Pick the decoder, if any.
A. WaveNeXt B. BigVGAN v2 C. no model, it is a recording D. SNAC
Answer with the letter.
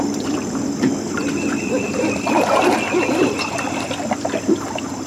B